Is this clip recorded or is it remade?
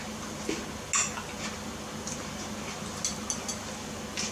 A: recorded